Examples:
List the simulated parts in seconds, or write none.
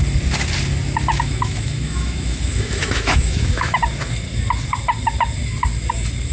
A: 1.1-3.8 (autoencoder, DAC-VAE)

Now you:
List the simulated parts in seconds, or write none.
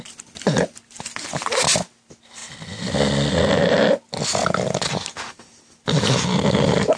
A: none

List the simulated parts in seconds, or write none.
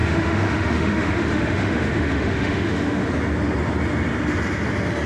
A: 0.0-3.1 (autoencoder, DAC-VAE)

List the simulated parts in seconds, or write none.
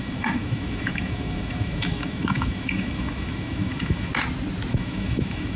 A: 0.0-4.1 (autoencoder, DAC-VAE); 4.7-5.6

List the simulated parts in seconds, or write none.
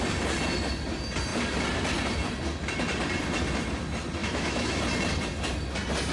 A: 4.2-4.8 (autoencoder, DAC-VAE)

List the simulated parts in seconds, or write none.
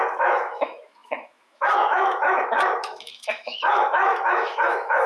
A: 0.0-5.1 (autoencoder, DAC-VAE)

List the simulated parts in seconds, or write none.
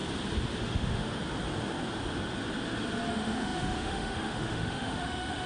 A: 0.6-1.2 (autoencoder, DAC-VAE); 3.1-5.5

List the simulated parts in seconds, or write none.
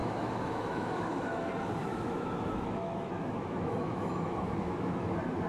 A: 0.0-1.5 (autoencoder, DAC-VAE); 1.9-5.1